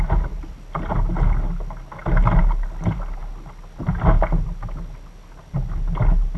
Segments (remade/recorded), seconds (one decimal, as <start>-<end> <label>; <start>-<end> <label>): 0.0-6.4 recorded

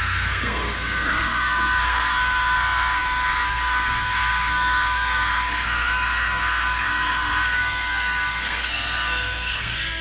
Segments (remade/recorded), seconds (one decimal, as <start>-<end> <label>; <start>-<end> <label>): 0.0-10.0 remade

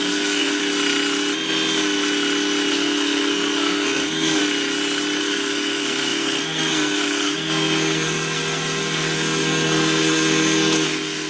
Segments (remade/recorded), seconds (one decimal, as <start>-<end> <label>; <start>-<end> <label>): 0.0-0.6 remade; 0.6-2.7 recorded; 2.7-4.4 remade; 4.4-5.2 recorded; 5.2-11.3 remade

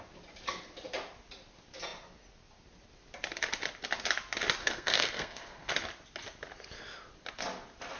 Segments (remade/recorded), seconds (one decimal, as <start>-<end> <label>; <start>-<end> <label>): 0.0-4.6 recorded; 4.6-5.7 remade; 5.7-8.0 recorded

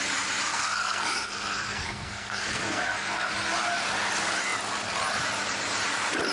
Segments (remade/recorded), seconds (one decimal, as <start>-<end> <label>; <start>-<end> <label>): 0.0-0.5 recorded; 0.5-3.3 remade; 3.3-6.3 recorded